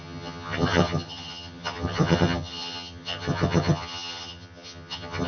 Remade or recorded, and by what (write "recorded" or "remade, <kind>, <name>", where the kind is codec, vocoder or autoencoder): remade, vocoder, HiFi-GAN